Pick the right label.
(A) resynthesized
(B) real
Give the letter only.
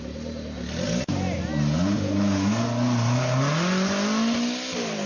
B